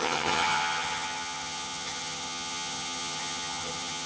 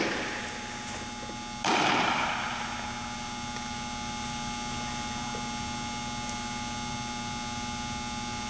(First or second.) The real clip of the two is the second